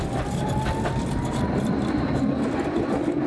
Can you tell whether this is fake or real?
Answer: real